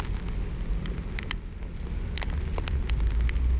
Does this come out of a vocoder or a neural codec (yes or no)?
no